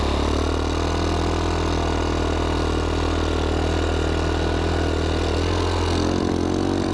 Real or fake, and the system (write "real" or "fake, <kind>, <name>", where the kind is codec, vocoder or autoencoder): real